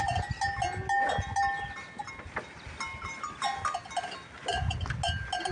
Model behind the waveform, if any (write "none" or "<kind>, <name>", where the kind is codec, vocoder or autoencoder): none